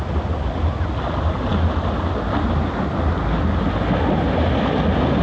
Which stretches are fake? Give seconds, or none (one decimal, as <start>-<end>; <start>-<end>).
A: none